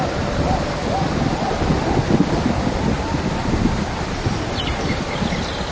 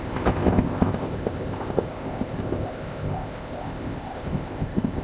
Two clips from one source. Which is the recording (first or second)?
first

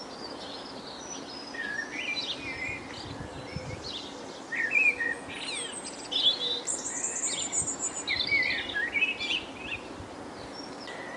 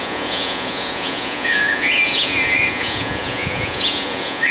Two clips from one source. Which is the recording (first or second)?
first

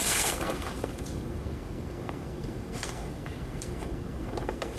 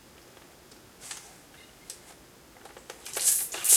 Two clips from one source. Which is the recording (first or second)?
second